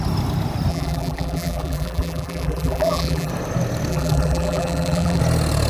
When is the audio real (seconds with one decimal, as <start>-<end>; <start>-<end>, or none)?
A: 0.0-0.7; 3.3-3.9; 5.2-5.7

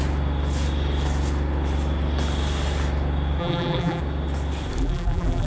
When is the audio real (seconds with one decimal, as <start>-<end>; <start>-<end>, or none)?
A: 0.0-3.4; 4.0-4.8

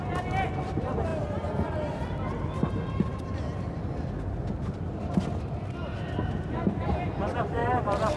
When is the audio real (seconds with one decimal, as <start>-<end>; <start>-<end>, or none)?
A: 0.0-7.6

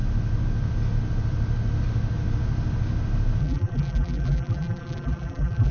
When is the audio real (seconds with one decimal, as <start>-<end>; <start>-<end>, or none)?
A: 0.0-3.4

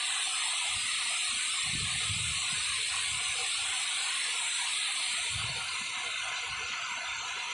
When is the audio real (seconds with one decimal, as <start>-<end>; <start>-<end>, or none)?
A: 0.0-7.5

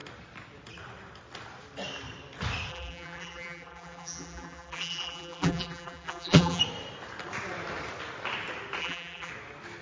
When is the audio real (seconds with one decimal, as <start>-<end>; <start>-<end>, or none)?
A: 0.0-2.7; 6.6-8.8; 9.3-9.8

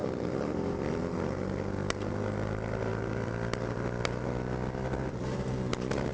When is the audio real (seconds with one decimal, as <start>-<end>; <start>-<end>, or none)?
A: 1.0-2.9; 5.3-6.1

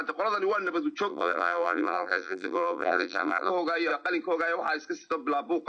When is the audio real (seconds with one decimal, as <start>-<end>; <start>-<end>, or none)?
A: 0.0-1.1; 3.5-5.7